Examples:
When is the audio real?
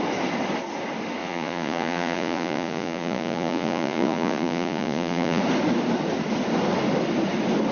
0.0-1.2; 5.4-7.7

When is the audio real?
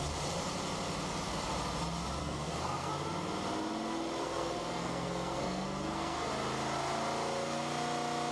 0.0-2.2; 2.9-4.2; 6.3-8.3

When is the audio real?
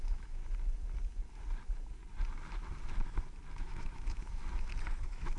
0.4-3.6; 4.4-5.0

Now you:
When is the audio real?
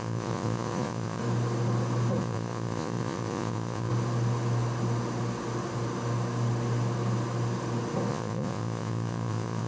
1.2-2.2; 3.9-8.1